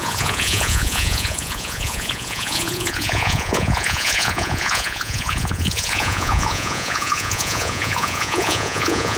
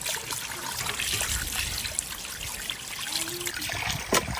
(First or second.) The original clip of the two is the second